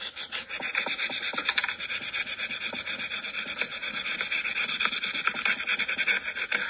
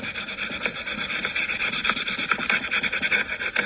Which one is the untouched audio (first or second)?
first